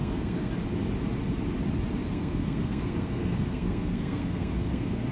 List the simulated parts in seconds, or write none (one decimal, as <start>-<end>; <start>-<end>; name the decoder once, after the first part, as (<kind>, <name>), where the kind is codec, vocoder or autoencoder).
0.0-0.5 (codec, SNAC); 2.0-5.1